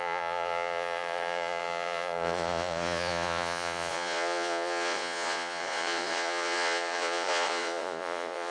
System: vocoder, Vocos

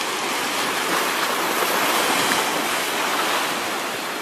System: none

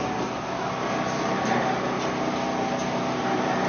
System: none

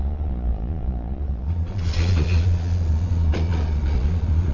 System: vocoder, Vocos